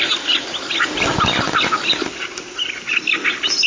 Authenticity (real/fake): real